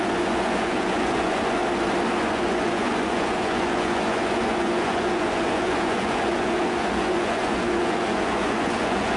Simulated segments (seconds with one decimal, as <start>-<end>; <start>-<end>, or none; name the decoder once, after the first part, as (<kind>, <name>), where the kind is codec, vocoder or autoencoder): 0.0-1.6 (vocoder, Vocos); 2.2-9.2